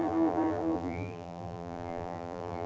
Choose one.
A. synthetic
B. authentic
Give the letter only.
A